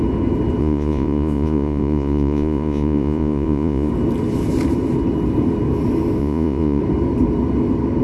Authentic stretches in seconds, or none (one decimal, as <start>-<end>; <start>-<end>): 0.0-0.6; 3.9-6.2; 6.8-8.0